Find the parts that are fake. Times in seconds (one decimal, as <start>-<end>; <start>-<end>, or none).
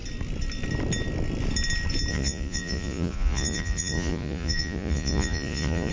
2.1-5.9